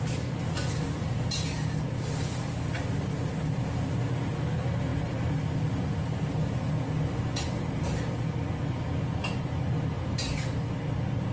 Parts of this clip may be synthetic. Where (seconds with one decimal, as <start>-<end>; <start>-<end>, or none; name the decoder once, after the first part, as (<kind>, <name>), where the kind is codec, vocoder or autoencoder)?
none